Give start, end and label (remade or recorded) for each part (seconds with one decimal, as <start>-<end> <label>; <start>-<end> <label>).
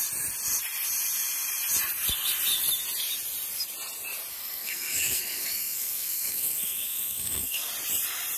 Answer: 0.0-4.4 recorded; 4.4-7.7 remade; 7.7-8.4 recorded